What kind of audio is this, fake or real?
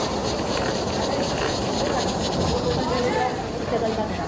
fake